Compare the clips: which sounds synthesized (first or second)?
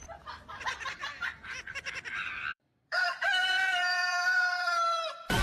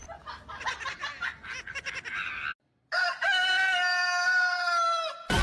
first